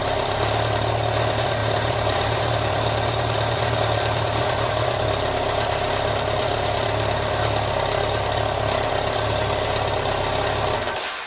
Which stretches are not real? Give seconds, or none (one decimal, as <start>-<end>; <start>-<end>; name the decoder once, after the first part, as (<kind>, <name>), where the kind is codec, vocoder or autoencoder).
1.6-4.7 (vocoder, BigVGAN v2)